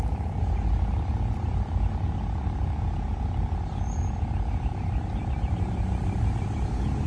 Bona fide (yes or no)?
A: yes